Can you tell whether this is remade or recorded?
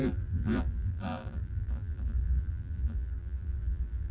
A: remade